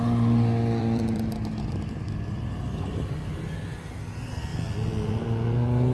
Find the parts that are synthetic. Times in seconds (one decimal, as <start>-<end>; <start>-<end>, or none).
0.8-2.3